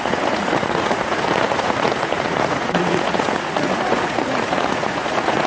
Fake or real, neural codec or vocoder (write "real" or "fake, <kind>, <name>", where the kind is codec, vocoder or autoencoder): fake, vocoder, Vocos